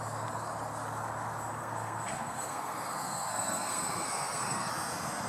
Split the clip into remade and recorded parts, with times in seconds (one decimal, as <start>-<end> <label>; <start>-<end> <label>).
0.0-1.6 recorded; 1.6-4.7 remade; 4.7-5.3 recorded

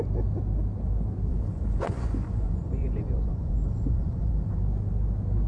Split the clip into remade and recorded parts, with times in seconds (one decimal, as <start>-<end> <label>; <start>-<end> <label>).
0.0-1.3 recorded; 1.3-4.6 remade; 4.6-5.5 recorded

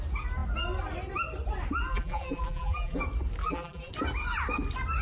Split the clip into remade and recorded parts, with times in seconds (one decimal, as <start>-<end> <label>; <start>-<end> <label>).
0.0-1.9 recorded; 1.9-3.0 remade; 3.0-3.4 recorded; 3.4-3.9 remade; 3.9-5.0 recorded

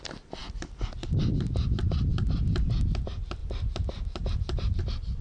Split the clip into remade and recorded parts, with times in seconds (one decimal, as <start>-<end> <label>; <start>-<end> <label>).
0.0-3.4 recorded; 3.4-4.8 remade; 4.8-5.2 recorded

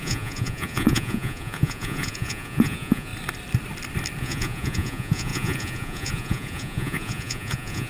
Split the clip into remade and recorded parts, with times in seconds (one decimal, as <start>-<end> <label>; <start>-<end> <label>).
0.0-3.1 remade; 3.1-4.2 recorded; 4.2-7.9 remade

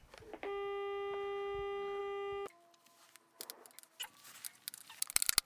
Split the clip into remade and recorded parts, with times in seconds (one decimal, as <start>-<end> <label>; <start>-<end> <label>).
0.0-5.4 recorded

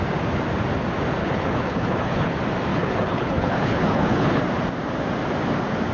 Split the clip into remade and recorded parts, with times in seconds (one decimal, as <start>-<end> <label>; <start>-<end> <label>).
0.0-1.2 recorded; 1.2-2.3 remade; 2.3-2.7 recorded; 2.7-4.4 remade; 4.4-5.9 recorded